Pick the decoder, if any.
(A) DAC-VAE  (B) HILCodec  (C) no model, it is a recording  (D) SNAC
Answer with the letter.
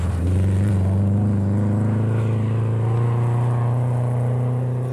C